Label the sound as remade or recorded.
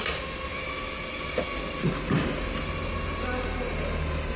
recorded